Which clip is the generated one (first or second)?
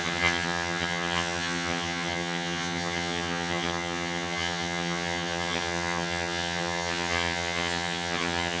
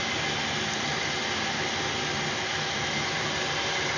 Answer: first